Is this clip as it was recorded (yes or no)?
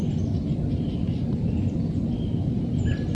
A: yes